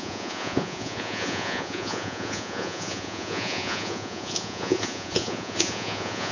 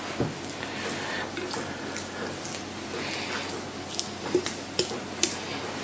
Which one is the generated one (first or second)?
first